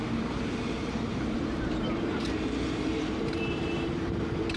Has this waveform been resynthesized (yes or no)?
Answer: yes